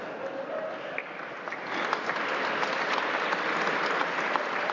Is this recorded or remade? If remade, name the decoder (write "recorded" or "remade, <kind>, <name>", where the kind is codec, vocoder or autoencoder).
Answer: recorded